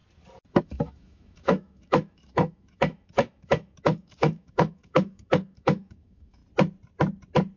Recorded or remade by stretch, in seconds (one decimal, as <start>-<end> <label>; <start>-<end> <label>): 0.0-0.6 recorded; 0.6-6.4 remade; 6.4-7.6 recorded